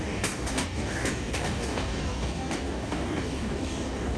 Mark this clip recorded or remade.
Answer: remade